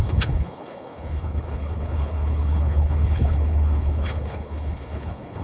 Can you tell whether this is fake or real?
fake